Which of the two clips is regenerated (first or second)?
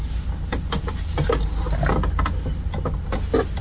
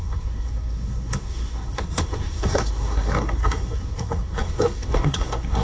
second